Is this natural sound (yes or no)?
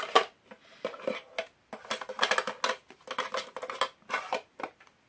yes